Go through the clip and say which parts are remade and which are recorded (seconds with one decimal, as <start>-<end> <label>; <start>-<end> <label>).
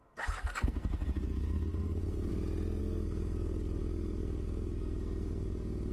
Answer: 0.0-2.3 remade; 2.3-2.8 recorded; 2.8-5.9 remade